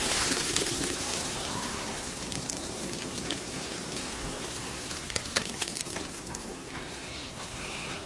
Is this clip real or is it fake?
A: fake